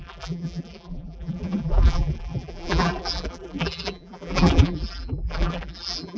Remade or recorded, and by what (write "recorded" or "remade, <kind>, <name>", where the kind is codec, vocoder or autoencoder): remade, vocoder, BigVGAN v2